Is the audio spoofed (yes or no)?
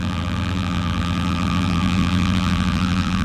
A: yes